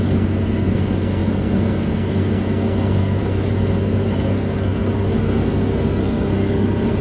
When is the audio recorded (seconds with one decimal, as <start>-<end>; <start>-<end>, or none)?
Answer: none